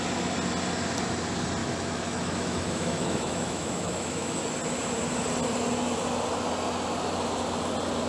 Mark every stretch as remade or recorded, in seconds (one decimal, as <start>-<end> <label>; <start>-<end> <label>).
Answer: 0.0-1.6 recorded; 1.6-4.4 remade; 4.4-8.1 recorded